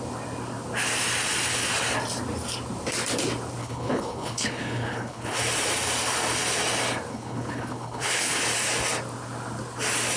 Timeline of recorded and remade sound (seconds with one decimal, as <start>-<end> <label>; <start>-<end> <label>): 0.0-3.6 recorded; 3.6-5.4 remade; 5.4-7.1 recorded; 7.1-8.4 remade; 8.4-10.2 recorded